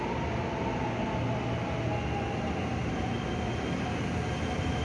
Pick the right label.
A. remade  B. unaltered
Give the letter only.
B